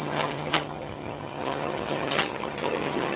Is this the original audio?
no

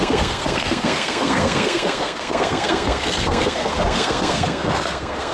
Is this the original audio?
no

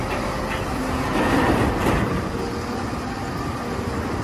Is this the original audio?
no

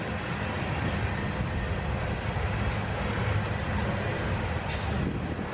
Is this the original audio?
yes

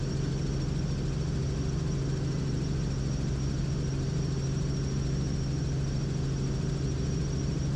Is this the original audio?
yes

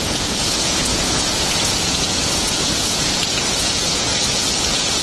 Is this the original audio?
no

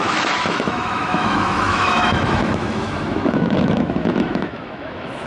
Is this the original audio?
no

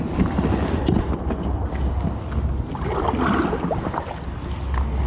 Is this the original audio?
yes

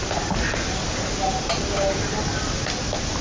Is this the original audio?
yes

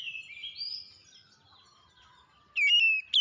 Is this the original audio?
yes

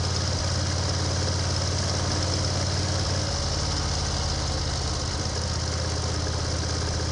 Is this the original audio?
yes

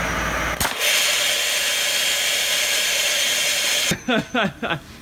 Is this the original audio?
yes